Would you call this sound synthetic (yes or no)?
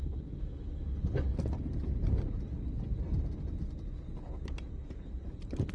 no